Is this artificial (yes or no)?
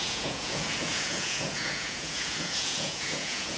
yes